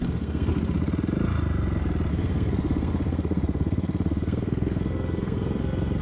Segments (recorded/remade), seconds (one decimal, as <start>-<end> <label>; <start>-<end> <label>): 0.0-0.5 remade; 0.5-2.1 recorded; 2.1-6.0 remade

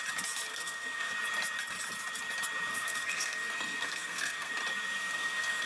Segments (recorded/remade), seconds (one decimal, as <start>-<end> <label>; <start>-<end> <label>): 0.0-0.5 recorded; 0.5-1.1 remade; 1.1-2.7 recorded; 2.7-4.5 remade; 4.5-5.0 recorded; 5.0-5.7 remade

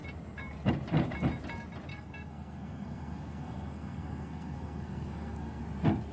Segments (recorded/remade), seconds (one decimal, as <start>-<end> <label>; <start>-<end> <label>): 0.0-1.9 recorded; 1.9-5.6 remade; 5.6-6.1 recorded

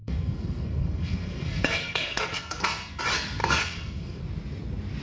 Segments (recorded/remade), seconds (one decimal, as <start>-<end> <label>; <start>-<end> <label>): 0.0-3.0 remade; 3.0-3.4 recorded; 3.4-4.2 remade; 4.2-5.0 recorded

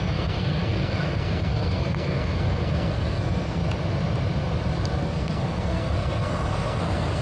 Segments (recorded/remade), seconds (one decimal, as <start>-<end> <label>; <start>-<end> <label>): 0.0-3.6 remade; 3.6-5.0 recorded; 5.0-7.2 remade

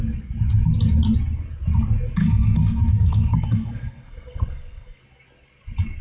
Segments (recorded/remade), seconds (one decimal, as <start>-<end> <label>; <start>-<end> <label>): 0.0-2.2 recorded; 2.2-5.0 remade; 5.0-6.0 recorded

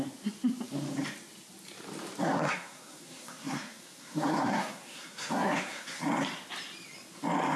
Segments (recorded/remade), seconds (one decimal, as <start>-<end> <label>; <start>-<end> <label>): 0.0-2.2 recorded; 2.2-6.0 remade; 6.0-7.6 recorded